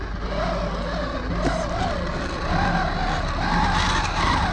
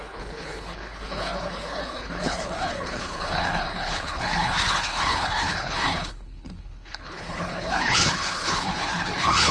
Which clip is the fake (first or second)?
second